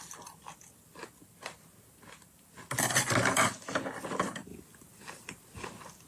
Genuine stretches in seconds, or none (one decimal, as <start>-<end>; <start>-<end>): 0.0-6.1